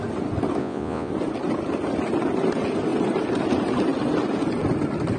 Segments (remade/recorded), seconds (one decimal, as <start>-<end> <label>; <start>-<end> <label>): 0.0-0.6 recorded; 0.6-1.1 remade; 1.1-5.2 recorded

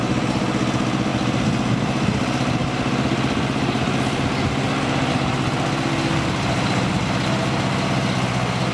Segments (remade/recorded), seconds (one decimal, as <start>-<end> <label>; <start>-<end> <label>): 0.0-8.7 recorded

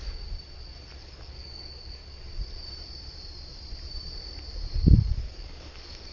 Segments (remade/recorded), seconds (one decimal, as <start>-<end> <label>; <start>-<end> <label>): 0.0-1.0 recorded; 1.0-2.0 remade; 2.0-5.2 recorded; 5.2-6.1 remade

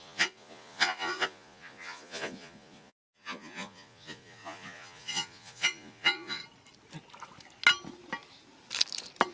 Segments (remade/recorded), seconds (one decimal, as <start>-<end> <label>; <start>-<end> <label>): 0.0-6.4 remade; 6.4-9.3 recorded

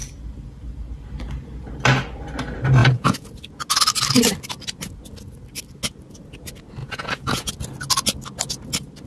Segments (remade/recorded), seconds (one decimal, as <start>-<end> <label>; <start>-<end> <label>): 0.0-2.8 recorded; 2.8-3.3 remade; 3.3-6.8 recorded; 6.8-7.5 remade; 7.5-9.1 recorded

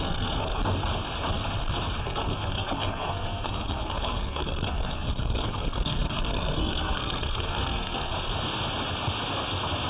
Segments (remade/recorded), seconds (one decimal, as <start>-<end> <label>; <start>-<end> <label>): 0.0-0.6 remade; 0.6-2.0 recorded; 2.0-8.1 remade; 8.1-9.9 recorded